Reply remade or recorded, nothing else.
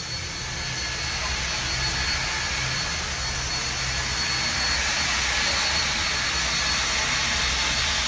recorded